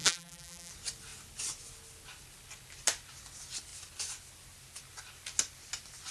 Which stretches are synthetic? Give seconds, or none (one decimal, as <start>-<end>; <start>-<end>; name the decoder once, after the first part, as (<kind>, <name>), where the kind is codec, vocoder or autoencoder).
0.0-0.7 (vocoder, BigVGAN v2)